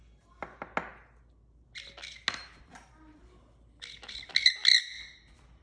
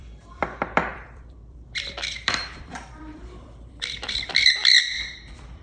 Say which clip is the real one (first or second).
first